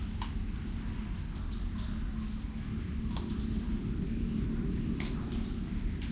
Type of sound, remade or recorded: recorded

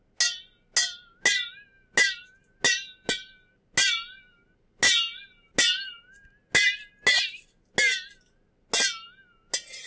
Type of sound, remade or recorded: recorded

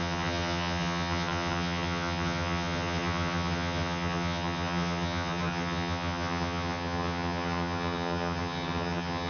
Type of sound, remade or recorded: remade